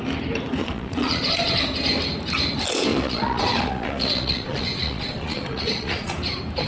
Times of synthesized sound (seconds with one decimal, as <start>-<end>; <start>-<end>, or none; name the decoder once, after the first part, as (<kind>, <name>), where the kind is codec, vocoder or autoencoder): 0.6-1.6 (vocoder, Vocos); 2.9-6.1